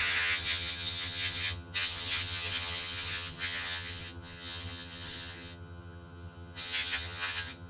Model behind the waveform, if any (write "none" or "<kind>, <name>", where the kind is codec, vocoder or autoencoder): vocoder, HiFi-GAN